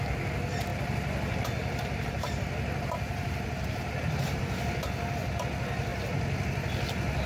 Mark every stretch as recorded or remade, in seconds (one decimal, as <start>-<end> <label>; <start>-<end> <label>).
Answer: 0.0-0.7 recorded; 0.7-4.4 remade; 4.4-7.3 recorded